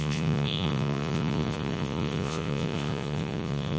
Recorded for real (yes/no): no